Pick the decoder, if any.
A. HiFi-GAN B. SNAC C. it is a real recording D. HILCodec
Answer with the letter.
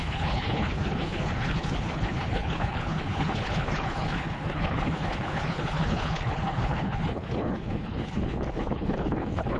D